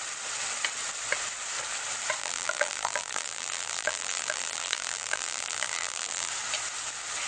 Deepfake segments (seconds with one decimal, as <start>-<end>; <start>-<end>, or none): 2.2-6.3